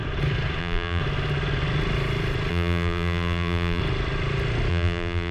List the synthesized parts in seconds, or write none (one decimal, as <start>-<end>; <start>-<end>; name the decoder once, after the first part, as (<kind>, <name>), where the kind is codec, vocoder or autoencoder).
0.6-1.0 (vocoder, BigVGAN v2); 2.5-3.8; 4.7-5.3